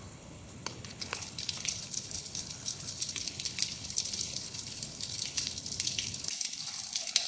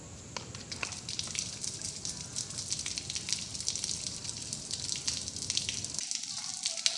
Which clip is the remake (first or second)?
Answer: first